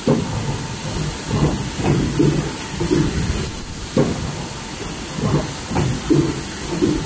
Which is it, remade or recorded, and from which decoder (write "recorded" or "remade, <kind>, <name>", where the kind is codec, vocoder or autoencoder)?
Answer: recorded